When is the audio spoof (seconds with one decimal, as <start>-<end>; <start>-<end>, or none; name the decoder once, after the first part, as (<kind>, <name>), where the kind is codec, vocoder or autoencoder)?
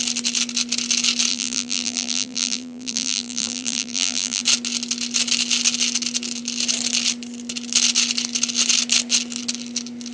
1.3-4.4 (vocoder, BigVGAN v2)